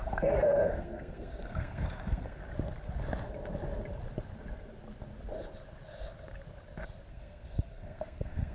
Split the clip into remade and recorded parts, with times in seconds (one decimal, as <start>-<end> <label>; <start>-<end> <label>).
0.0-2.4 remade; 2.4-7.1 recorded; 7.1-8.5 remade